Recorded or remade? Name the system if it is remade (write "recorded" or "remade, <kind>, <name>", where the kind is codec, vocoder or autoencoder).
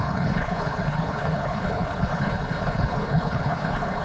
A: remade, codec, HILCodec